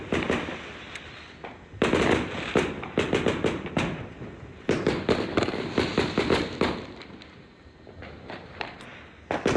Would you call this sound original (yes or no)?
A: no